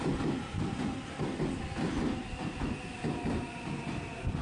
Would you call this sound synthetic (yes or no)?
no